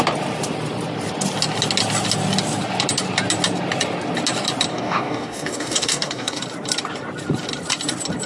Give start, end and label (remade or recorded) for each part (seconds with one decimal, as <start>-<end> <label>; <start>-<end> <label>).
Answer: 0.0-4.7 recorded; 4.7-6.4 remade; 6.4-8.3 recorded